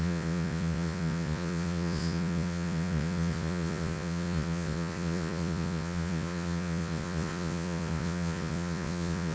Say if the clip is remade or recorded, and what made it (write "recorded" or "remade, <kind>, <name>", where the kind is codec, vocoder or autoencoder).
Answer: remade, vocoder, Vocos